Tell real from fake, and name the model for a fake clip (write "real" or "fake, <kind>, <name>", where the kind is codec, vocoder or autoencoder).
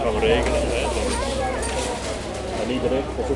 real